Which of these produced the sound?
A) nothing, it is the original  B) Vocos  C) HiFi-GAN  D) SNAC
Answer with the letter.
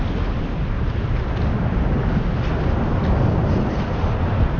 A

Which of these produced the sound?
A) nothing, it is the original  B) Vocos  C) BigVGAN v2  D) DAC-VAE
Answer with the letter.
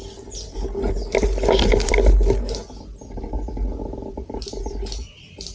A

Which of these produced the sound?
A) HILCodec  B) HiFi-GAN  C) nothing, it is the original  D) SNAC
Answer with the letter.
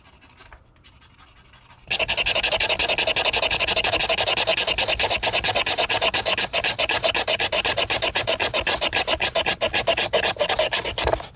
C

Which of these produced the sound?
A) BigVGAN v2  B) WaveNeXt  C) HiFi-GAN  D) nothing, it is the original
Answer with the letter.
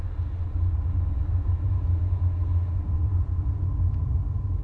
D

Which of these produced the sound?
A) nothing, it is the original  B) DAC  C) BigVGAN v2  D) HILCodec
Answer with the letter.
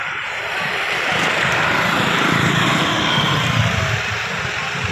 A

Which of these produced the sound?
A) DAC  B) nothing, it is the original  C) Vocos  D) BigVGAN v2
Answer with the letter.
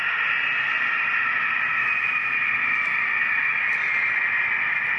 B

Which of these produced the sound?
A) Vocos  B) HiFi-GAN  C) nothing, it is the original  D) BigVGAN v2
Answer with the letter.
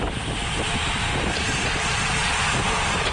C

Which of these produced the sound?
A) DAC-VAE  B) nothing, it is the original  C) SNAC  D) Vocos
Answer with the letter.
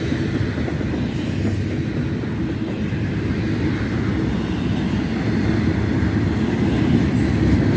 B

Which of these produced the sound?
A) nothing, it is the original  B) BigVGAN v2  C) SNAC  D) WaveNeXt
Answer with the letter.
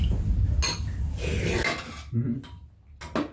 A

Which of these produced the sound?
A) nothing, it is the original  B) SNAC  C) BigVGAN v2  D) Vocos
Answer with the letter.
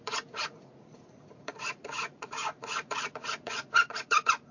D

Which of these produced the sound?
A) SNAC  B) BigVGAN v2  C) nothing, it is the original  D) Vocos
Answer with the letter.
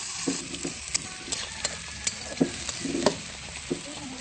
C